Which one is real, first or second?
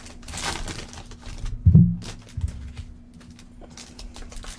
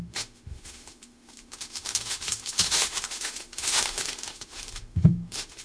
first